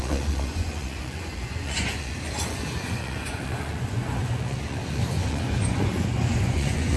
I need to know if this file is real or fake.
fake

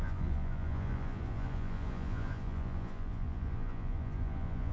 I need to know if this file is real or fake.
fake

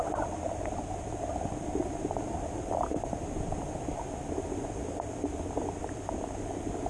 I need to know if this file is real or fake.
real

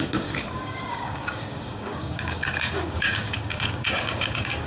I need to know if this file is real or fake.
fake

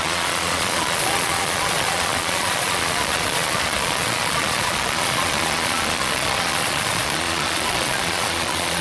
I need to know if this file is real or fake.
fake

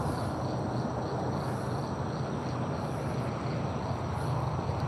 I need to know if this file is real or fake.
real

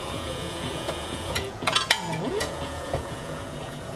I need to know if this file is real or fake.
fake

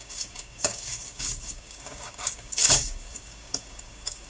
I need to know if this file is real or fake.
fake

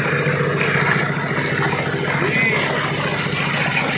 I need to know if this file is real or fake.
real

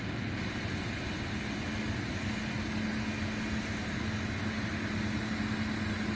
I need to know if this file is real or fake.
real